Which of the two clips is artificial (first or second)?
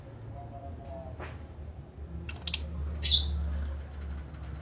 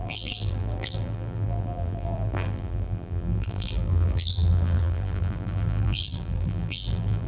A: second